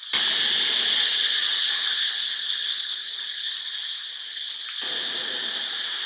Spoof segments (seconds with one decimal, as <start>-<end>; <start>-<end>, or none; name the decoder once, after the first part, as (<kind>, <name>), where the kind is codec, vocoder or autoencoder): none